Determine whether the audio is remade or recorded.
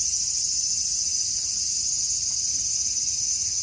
recorded